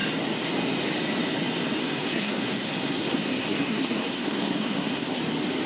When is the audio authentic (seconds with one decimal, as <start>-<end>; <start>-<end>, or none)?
0.0-1.8; 5.2-5.7